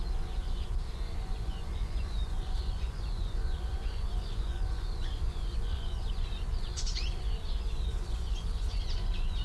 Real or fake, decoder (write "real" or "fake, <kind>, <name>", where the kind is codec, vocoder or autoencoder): fake, vocoder, Vocos